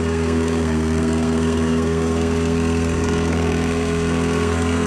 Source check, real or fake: fake